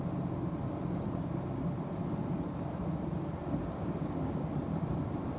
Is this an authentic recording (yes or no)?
yes